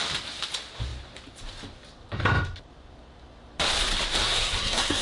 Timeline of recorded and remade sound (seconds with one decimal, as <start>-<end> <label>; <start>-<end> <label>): 0.0-4.2 recorded; 4.2-5.0 remade

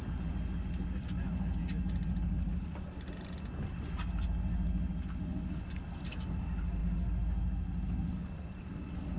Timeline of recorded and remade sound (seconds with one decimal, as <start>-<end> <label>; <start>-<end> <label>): 0.0-9.2 recorded

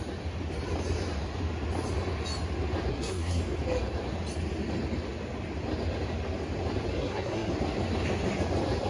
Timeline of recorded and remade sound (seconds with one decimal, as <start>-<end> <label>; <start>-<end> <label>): 0.0-2.9 recorded; 2.9-3.4 remade; 3.4-6.9 recorded; 6.9-7.5 remade; 7.5-8.9 recorded

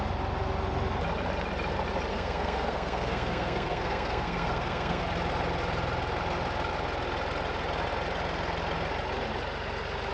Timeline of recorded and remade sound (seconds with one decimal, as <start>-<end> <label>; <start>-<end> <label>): 0.0-2.1 recorded; 2.1-5.0 remade; 5.0-10.1 recorded

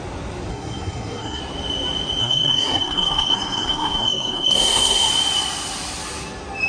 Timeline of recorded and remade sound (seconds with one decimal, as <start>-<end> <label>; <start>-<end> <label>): 0.0-0.5 recorded; 0.5-1.4 remade; 1.4-2.2 recorded; 2.2-5.1 remade; 5.1-6.7 recorded

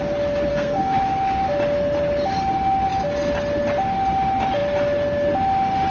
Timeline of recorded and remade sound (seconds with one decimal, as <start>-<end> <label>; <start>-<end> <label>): 0.0-0.5 recorded; 0.5-1.0 remade; 1.0-5.9 recorded

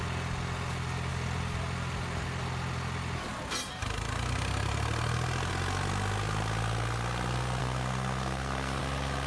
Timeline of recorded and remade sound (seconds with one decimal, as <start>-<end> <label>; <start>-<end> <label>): 0.0-7.6 recorded; 7.6-8.8 remade; 8.8-9.3 recorded